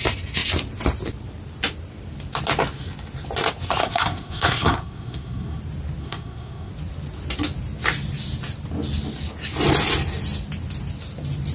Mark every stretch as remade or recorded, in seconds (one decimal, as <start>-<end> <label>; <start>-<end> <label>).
0.0-3.8 recorded; 3.8-5.6 remade; 5.6-6.0 recorded; 6.0-6.7 remade; 6.7-11.5 recorded